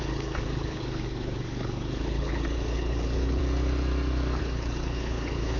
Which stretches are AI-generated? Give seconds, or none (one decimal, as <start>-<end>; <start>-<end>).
0.0-3.4; 4.4-5.6